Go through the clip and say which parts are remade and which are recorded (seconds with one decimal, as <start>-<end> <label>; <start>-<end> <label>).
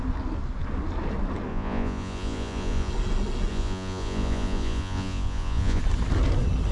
0.0-1.5 recorded; 1.5-2.9 remade; 2.9-3.5 recorded; 3.5-5.8 remade; 5.8-6.7 recorded